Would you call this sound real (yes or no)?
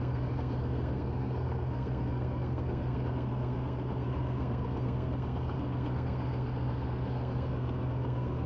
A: no